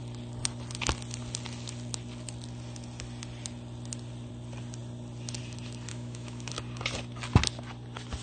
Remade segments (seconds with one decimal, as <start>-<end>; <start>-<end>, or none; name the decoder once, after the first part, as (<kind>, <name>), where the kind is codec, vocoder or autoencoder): 5.9-6.5 (autoencoder, DAC-VAE)